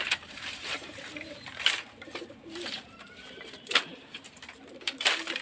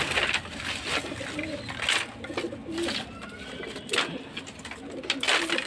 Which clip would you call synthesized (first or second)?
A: first